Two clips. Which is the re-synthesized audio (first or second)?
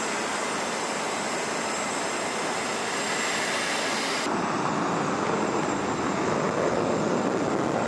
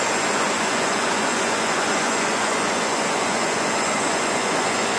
second